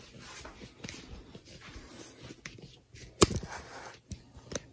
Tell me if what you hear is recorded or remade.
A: recorded